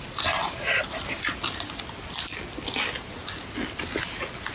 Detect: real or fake real